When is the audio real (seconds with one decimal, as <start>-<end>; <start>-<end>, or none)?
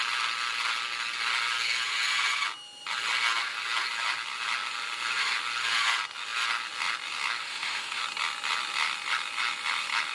0.0-7.4; 8.0-10.1